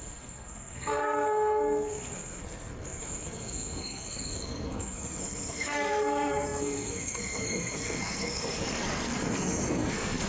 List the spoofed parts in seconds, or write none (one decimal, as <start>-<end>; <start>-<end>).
0.0-10.3

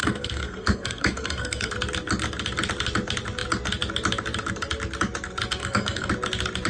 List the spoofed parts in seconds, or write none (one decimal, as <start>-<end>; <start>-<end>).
0.0-1.7; 5.6-6.1

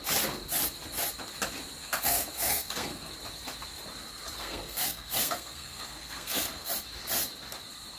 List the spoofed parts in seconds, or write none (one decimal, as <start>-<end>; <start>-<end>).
1.8-3.1; 4.4-6.7